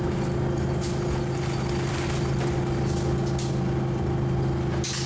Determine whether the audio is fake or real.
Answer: real